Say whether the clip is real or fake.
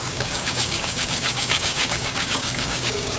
fake